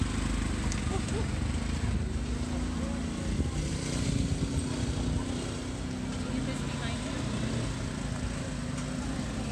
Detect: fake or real real